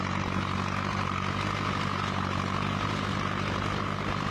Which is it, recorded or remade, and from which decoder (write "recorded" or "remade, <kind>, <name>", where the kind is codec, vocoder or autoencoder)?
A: recorded